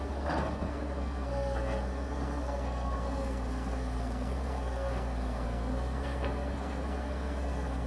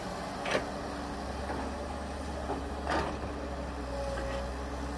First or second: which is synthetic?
first